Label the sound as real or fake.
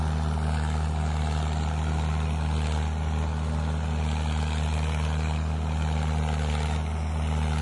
real